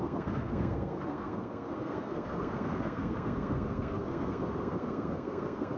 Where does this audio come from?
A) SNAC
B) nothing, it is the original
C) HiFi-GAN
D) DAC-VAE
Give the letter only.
A